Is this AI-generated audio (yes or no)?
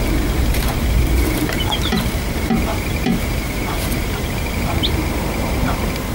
yes